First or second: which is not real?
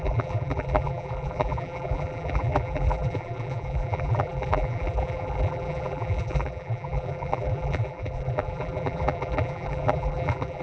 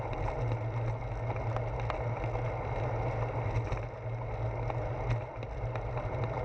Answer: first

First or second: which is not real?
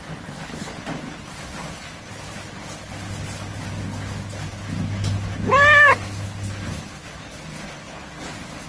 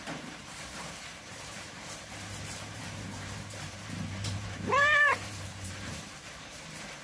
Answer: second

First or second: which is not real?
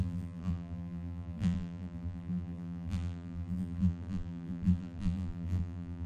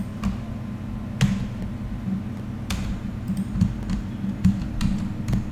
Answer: first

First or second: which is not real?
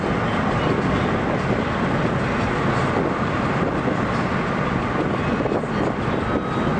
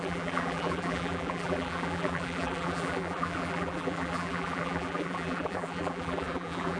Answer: second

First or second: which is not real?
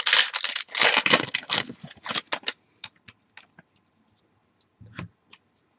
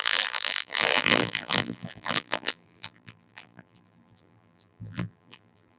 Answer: second